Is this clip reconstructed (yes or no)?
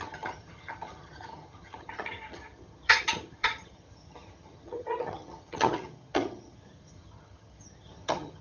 yes